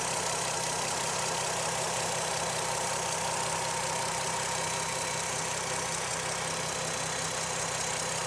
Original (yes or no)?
yes